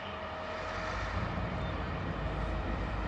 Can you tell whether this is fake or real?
fake